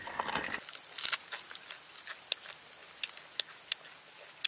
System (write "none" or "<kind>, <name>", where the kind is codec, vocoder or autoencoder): none